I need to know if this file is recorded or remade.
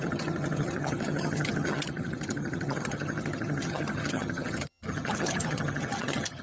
remade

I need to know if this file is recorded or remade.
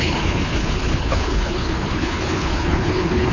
remade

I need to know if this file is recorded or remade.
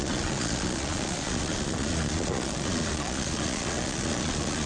remade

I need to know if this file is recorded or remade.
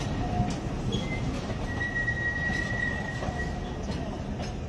recorded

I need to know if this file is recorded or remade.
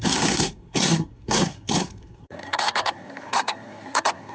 remade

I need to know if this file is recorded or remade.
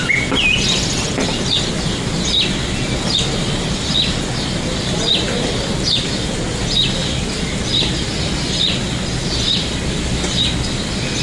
recorded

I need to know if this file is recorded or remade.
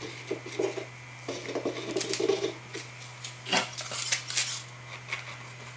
recorded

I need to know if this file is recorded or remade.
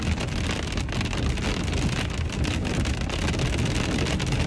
recorded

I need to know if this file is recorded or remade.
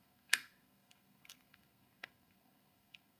remade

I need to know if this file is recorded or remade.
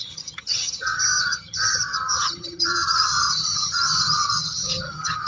remade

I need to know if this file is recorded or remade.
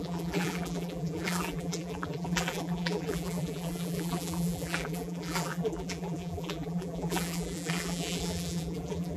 remade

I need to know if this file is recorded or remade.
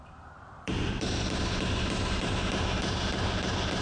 remade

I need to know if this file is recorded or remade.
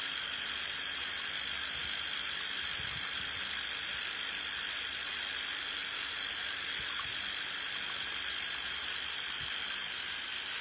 recorded